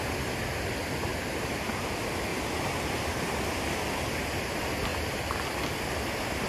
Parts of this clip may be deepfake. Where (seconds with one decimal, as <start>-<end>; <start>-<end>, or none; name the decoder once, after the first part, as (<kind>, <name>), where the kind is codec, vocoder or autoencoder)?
1.1-1.8 (vocoder, BigVGAN v2); 2.3-2.9